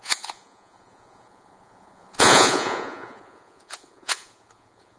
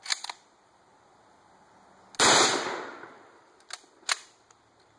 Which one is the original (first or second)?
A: second